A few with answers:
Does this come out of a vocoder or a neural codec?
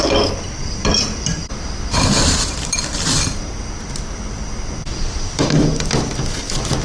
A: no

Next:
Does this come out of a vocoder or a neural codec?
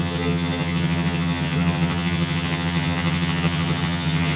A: yes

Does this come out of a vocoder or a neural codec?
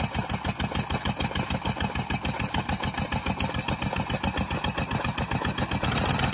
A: no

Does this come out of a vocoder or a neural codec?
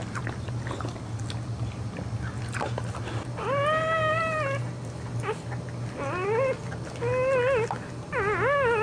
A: no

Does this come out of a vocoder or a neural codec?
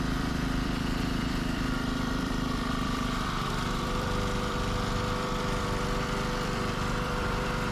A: yes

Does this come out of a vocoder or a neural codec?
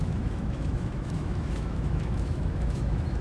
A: yes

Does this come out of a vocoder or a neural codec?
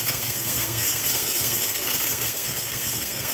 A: yes